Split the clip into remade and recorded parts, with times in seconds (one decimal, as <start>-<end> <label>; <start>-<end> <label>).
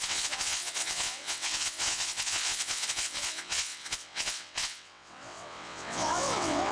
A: 0.0-6.7 remade